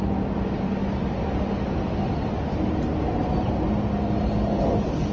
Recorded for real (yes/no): yes